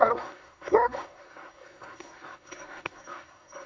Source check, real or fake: fake